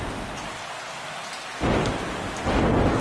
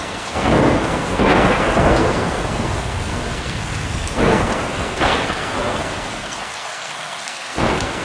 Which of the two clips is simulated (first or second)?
second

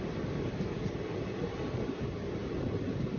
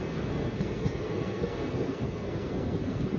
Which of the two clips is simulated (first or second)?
second